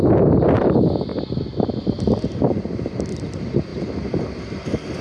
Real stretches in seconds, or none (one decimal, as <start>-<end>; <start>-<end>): 1.1-2.0; 3.7-4.4